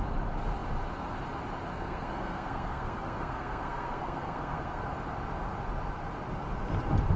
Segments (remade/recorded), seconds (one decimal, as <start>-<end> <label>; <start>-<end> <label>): 0.0-1.7 recorded; 1.7-4.8 remade; 4.8-7.2 recorded

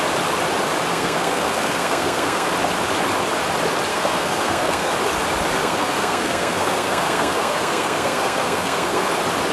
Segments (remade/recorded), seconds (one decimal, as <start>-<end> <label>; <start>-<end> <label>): 0.0-0.9 recorded; 0.9-2.5 remade; 2.5-3.9 recorded; 3.9-4.9 remade; 4.9-5.6 recorded; 5.6-9.1 remade; 9.1-9.5 recorded

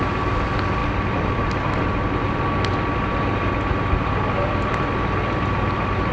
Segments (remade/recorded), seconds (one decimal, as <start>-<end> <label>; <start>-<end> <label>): 0.0-6.1 recorded

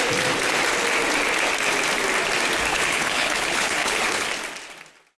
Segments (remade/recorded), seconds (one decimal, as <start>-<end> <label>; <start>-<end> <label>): 0.0-2.7 recorded; 2.7-4.3 remade; 4.3-5.2 recorded